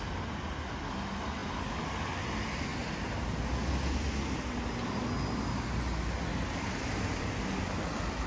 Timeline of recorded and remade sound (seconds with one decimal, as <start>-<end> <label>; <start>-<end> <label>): 0.0-8.3 recorded